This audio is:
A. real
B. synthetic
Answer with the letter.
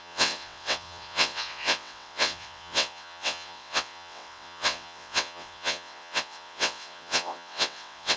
B